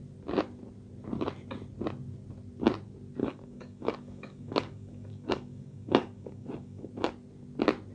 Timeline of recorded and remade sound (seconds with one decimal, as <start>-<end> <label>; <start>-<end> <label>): 0.0-3.2 recorded; 3.2-6.9 remade; 6.9-7.9 recorded